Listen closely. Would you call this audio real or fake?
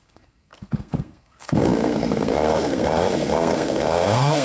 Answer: fake